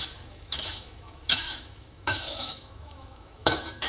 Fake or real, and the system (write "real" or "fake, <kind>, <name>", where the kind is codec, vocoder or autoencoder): fake, autoencoder, DAC-VAE